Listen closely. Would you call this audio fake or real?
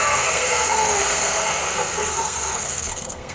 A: fake